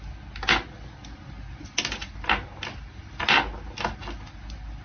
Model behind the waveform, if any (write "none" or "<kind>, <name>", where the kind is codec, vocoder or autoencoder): none